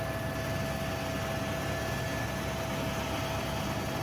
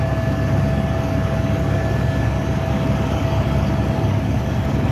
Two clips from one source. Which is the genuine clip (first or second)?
first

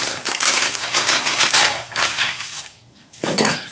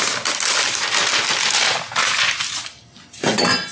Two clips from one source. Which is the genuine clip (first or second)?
second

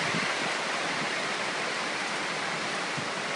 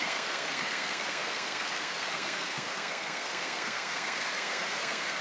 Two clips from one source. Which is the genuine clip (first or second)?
first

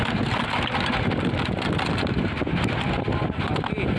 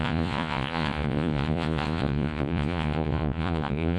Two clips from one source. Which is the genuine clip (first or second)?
first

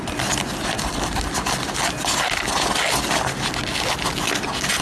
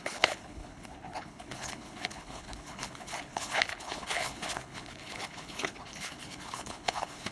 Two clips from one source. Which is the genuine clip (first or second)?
first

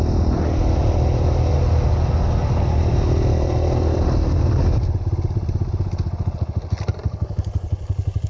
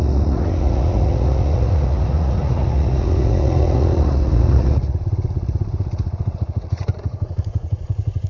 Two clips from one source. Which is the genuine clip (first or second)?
first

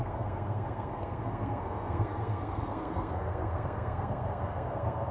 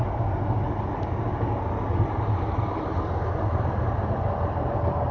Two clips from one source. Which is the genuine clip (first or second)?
second